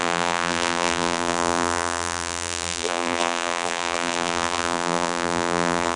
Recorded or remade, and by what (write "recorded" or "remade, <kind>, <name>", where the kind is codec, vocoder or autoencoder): remade, vocoder, BigVGAN v2